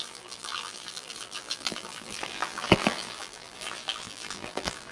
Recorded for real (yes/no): no